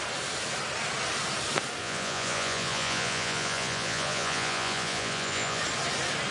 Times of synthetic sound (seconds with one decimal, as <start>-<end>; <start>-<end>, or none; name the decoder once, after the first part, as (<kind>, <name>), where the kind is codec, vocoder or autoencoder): 1.8-5.6 (vocoder, Vocos)